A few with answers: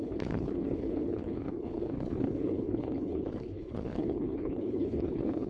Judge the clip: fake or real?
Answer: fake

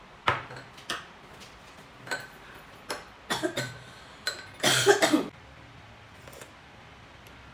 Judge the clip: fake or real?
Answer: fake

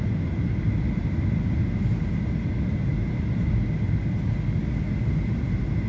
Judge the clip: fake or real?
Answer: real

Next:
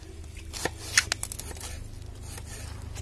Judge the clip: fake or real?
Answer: real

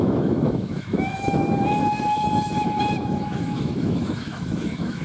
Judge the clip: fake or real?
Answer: fake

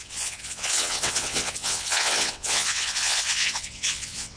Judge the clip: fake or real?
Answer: fake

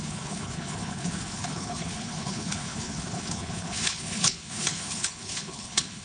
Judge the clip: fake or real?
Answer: fake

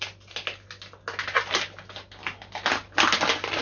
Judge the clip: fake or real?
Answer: real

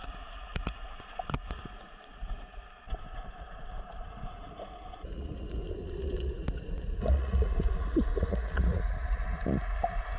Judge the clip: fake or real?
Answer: fake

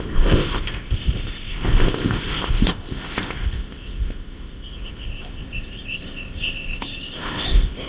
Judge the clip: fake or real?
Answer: fake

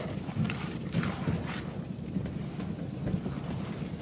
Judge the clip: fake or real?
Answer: real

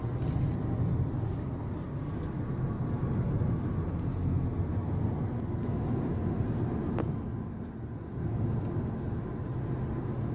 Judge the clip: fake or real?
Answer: real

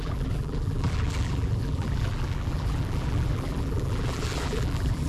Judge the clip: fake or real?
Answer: fake